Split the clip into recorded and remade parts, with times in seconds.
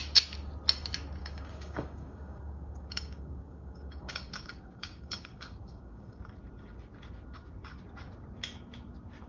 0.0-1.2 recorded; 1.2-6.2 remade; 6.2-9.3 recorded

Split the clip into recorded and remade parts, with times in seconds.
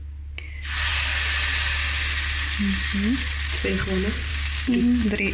0.0-4.3 recorded; 4.3-4.8 remade; 4.8-5.3 recorded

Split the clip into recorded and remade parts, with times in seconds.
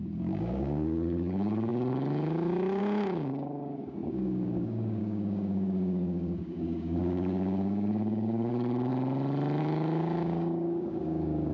0.0-8.9 remade; 8.9-9.6 recorded; 9.6-11.5 remade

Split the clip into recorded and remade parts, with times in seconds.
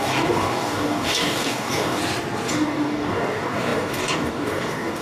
0.0-2.0 remade; 2.0-2.5 recorded; 2.5-5.0 remade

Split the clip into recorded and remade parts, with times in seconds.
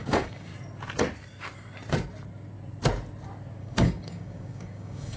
0.0-0.5 remade; 0.5-3.6 recorded; 3.6-5.2 remade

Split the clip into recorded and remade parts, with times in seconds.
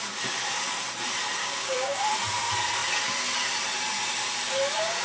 0.0-1.4 recorded; 1.4-2.0 remade; 2.0-5.0 recorded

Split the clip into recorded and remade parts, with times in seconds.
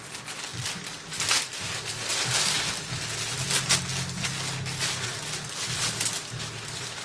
0.0-7.0 recorded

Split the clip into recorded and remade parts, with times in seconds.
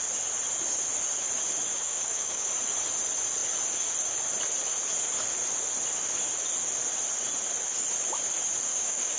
0.0-1.7 recorded; 1.7-2.5 remade; 2.5-8.7 recorded; 8.7-9.2 remade